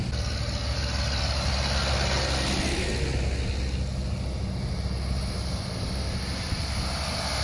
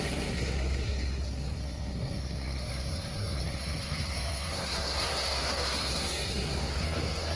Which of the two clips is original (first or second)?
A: first